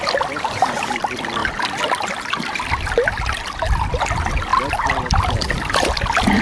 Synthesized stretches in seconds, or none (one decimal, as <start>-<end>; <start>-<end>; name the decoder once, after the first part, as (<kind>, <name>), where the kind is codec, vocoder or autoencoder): none